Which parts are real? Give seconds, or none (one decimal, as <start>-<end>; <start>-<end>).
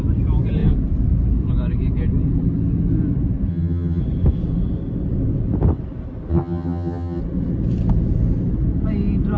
0.0-3.5; 4.0-6.3; 7.2-9.4